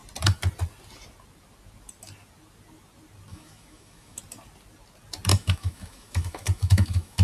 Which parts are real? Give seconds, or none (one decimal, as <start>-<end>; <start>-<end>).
0.0-3.3; 4.2-5.3